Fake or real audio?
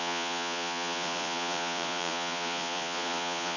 fake